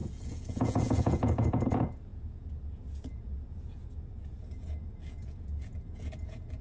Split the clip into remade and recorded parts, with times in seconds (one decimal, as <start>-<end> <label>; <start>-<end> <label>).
0.0-6.6 remade

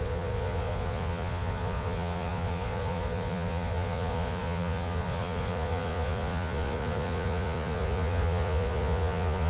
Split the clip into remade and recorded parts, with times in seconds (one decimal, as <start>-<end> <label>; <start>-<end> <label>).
0.0-9.5 remade

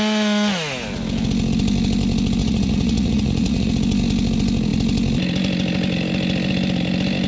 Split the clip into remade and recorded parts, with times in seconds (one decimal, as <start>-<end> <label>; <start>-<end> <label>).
0.0-2.4 recorded; 2.4-3.7 remade; 3.7-7.3 recorded

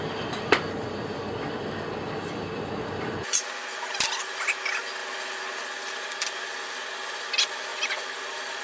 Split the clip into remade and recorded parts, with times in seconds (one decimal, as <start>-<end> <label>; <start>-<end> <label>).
0.0-8.6 recorded